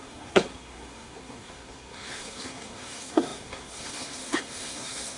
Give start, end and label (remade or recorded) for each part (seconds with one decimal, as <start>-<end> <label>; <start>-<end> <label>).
0.0-5.2 remade